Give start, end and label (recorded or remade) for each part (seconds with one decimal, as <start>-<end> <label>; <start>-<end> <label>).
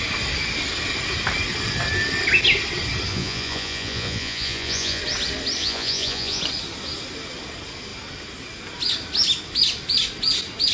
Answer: 0.0-3.1 recorded; 3.1-5.0 remade; 5.0-5.6 recorded; 5.6-6.4 remade; 6.4-10.7 recorded